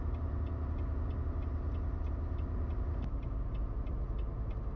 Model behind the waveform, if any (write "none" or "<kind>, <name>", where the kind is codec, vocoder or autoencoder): none